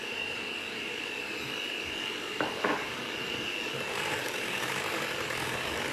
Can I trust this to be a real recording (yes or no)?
no